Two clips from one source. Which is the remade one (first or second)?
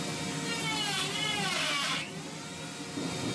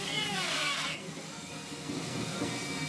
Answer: second